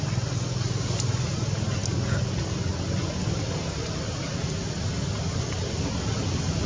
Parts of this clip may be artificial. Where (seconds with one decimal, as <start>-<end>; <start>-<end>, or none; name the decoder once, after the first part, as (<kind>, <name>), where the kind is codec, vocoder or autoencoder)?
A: none